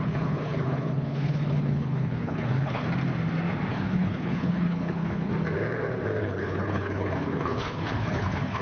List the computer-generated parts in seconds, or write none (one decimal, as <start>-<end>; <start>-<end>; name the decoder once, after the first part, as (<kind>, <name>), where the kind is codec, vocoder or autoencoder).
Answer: 0.0-2.8 (codec, HILCodec); 3.7-5.3; 6.2-8.6